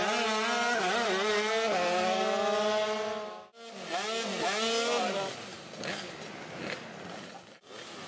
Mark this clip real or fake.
real